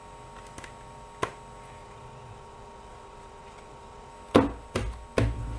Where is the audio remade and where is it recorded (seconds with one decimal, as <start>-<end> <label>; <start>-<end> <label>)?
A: 0.0-1.8 recorded; 1.8-4.1 remade; 4.1-5.6 recorded